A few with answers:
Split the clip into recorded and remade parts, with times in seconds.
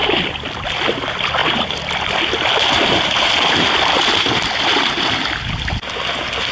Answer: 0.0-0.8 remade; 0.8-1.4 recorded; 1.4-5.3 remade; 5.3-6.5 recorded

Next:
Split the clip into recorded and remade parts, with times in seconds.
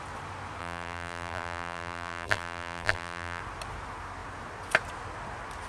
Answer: 0.0-0.6 recorded; 0.6-3.4 remade; 3.4-5.7 recorded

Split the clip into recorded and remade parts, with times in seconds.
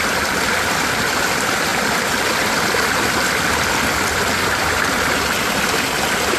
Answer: 0.0-6.4 recorded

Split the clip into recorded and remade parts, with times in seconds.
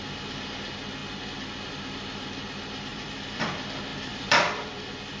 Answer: 0.0-2.9 recorded; 2.9-3.5 remade; 3.5-3.9 recorded; 3.9-5.2 remade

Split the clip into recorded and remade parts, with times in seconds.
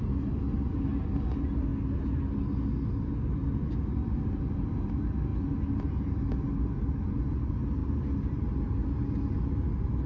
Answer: 0.0-10.1 recorded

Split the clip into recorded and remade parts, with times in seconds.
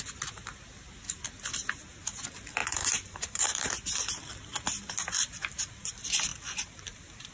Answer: 0.0-2.6 recorded; 2.6-3.7 remade; 3.7-6.3 recorded; 6.3-7.3 remade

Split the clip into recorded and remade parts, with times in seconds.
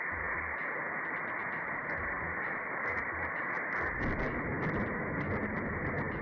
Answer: 0.0-1.4 recorded; 1.4-3.4 remade; 3.4-4.5 recorded; 4.5-5.2 remade; 5.2-6.2 recorded